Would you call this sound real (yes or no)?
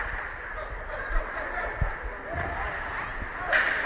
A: yes